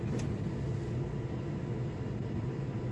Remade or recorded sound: recorded